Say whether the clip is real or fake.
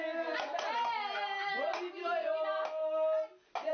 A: real